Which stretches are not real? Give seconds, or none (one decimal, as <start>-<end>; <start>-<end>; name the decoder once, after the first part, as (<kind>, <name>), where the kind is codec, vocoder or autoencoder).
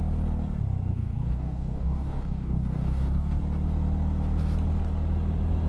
0.9-3.4 (codec, DAC)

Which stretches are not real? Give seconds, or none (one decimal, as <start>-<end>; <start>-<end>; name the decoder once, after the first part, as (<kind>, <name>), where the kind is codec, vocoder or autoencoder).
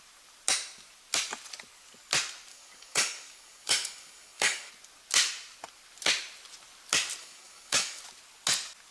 2.5-4.7 (codec, DAC); 7.2-8.0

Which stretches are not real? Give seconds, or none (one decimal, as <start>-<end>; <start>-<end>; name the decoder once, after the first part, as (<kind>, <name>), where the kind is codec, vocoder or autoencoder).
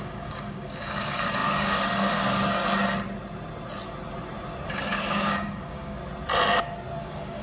0.0-2.6 (codec, DAC); 4.7-6.0; 7.0-7.4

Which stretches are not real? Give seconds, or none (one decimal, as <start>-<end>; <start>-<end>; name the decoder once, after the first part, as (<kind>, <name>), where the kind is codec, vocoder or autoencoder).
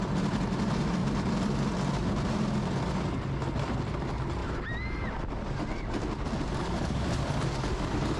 6.6-8.2 (codec, DAC)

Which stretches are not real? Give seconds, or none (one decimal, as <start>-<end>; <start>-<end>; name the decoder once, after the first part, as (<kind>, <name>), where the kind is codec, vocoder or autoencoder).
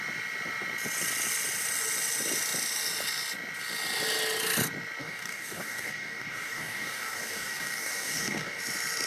5.0-8.6 (codec, DAC)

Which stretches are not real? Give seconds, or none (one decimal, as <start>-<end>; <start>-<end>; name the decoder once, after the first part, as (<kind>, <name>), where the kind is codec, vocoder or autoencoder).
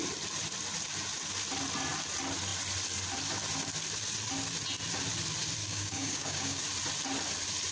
5.6-6.6 (codec, DAC)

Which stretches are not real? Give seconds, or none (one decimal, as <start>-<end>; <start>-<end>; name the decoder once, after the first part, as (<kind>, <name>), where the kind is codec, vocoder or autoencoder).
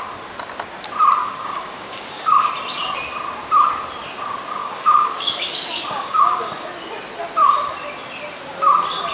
1.2-2.5 (codec, DAC); 4.6-6.5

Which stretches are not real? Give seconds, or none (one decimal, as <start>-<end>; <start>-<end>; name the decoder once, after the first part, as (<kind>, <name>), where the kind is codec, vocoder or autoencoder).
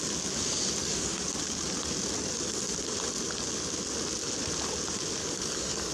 0.8-1.3 (codec, DAC); 5.2-5.9